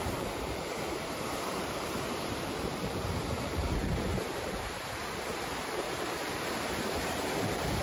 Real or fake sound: fake